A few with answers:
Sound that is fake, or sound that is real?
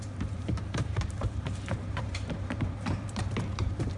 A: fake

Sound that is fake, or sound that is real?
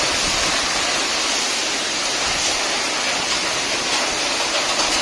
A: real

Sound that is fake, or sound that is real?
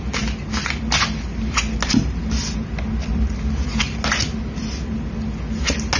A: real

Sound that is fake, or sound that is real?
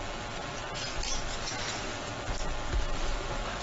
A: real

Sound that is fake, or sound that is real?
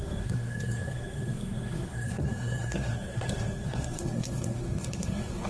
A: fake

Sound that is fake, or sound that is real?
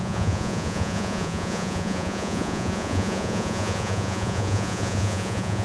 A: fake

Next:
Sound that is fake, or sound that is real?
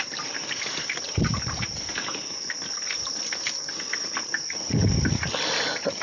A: real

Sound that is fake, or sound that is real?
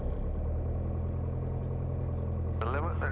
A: real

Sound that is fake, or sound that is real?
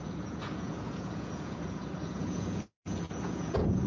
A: fake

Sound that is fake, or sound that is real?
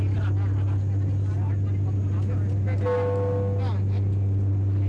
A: real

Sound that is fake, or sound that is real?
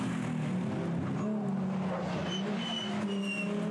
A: real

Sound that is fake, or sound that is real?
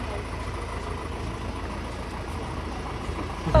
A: real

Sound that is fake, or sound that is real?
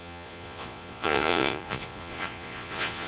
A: fake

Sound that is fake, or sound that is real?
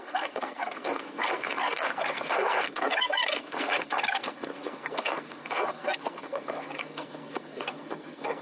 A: fake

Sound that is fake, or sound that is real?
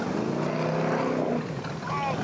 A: real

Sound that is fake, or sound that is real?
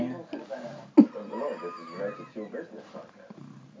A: real